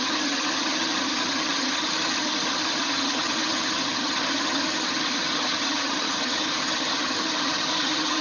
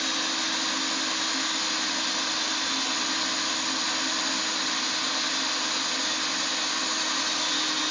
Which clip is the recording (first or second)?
second